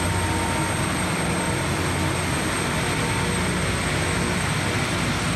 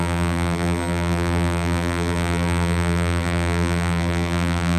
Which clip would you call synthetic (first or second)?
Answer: second